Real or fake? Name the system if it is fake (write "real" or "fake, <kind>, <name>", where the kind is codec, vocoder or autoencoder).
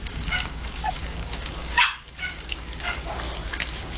fake, codec, DAC